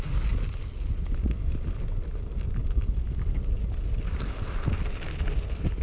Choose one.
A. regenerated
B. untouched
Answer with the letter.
B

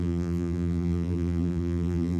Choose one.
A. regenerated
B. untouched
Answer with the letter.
A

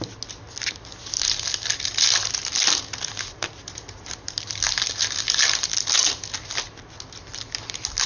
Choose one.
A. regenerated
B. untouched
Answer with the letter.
B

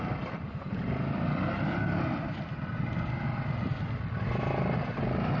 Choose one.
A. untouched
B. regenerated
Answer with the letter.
A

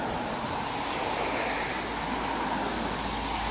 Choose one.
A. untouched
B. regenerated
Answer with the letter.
A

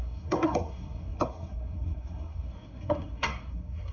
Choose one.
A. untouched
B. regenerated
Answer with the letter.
B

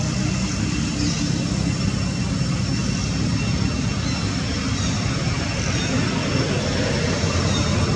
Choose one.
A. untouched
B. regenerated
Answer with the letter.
A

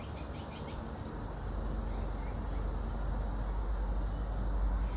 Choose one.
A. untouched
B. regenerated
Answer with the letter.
A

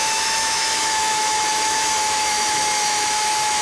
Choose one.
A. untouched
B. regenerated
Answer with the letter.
B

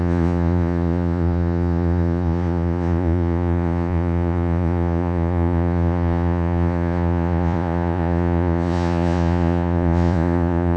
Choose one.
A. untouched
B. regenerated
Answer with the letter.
B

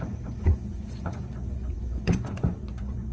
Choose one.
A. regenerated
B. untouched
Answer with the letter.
A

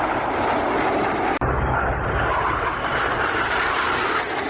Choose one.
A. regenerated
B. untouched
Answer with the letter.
A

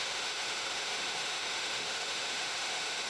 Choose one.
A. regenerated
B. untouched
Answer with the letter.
A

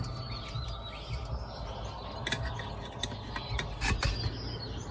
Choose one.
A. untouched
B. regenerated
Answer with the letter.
A